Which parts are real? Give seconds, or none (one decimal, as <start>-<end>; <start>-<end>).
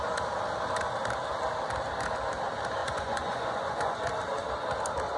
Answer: 0.0-2.8; 4.0-5.2